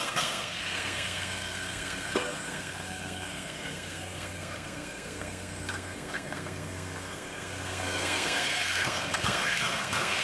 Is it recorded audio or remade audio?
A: remade